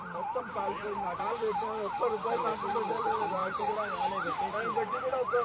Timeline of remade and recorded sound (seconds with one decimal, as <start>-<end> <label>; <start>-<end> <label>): 0.0-3.4 remade; 3.4-5.0 recorded; 5.0-5.4 remade